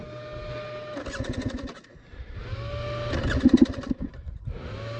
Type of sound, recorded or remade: recorded